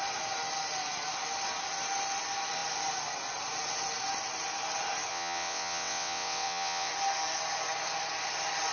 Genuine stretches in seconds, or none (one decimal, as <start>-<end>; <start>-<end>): 0.0-5.1; 6.9-8.7